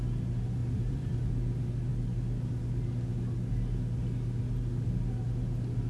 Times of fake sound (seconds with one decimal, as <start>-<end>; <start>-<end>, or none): 0.6-1.3